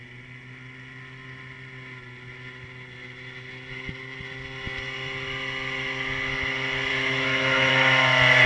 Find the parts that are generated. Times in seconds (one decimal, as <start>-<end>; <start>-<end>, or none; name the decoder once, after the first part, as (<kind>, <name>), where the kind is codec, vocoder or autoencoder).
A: 6.9-7.7 (autoencoder, DAC-VAE)

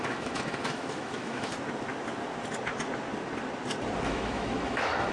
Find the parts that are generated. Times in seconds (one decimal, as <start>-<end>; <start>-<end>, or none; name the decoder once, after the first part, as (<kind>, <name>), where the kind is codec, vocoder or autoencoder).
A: 0.0-1.5 (autoencoder, DAC-VAE); 4.1-5.1

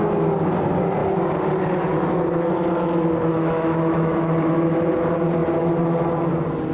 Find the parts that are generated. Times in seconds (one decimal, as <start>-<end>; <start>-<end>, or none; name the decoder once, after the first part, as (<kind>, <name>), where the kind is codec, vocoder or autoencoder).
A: 3.3-4.9 (autoencoder, DAC-VAE)

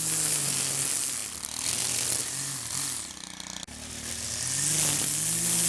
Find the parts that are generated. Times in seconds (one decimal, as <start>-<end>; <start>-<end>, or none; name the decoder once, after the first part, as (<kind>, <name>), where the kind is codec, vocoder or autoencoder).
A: none

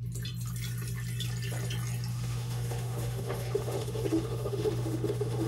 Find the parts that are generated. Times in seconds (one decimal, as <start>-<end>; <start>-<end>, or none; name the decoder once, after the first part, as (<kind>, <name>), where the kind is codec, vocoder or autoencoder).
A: 2.1-5.5 (autoencoder, DAC-VAE)